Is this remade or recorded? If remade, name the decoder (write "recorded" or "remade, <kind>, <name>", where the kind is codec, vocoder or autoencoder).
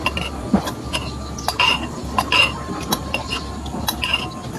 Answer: recorded